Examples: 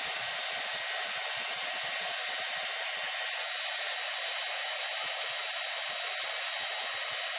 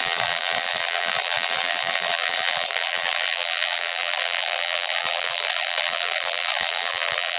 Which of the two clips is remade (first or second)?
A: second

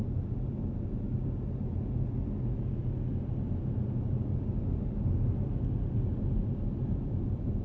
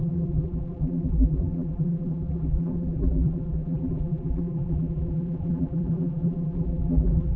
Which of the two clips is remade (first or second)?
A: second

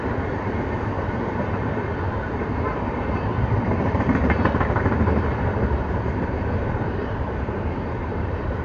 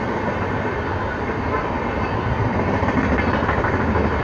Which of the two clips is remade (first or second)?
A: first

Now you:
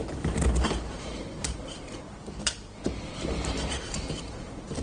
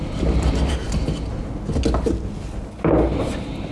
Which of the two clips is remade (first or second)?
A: first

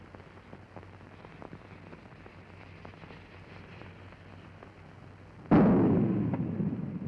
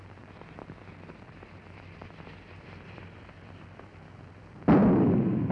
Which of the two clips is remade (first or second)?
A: second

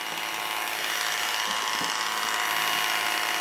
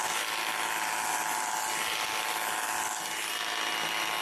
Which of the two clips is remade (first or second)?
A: first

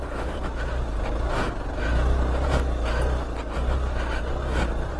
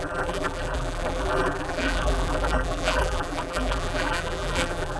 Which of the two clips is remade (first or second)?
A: second